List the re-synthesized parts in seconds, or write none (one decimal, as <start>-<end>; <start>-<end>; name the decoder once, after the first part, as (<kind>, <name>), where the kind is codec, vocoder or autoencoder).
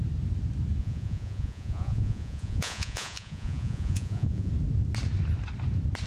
0.8-4.5 (vocoder, Vocos)